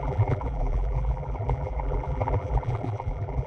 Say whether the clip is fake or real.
fake